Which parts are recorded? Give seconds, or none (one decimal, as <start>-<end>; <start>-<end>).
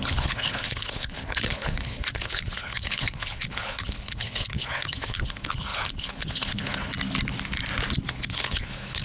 6.9-8.1